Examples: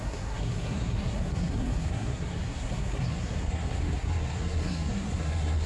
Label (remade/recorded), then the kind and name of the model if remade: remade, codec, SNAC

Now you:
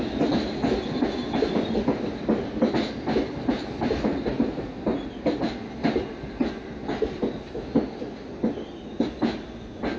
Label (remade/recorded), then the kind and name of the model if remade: recorded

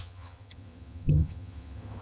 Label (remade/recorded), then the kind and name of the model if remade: remade, vocoder, HiFi-GAN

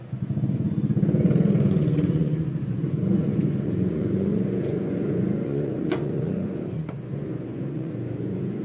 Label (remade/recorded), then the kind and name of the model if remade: remade, vocoder, Vocos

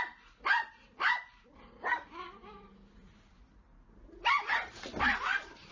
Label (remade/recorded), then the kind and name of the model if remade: remade, vocoder, BigVGAN v2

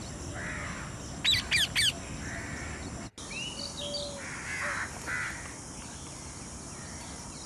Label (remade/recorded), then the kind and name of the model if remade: recorded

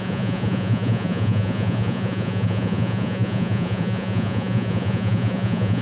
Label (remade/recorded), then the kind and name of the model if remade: remade, vocoder, Vocos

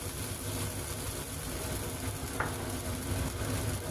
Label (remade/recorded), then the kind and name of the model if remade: recorded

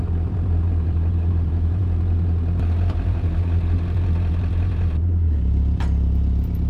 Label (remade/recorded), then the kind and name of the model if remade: remade, vocoder, BigVGAN v2